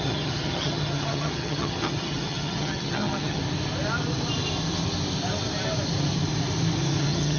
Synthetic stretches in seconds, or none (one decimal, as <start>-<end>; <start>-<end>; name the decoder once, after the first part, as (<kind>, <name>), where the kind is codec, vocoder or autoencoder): 0.0-3.4 (vocoder, HiFi-GAN); 7.0-7.4